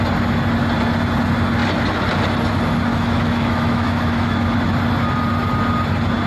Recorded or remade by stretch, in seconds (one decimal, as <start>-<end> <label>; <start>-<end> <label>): 0.0-2.9 recorded; 2.9-4.4 remade; 4.4-6.3 recorded